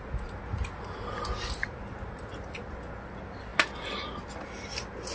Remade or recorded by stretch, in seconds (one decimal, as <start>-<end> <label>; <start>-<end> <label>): 0.0-5.1 recorded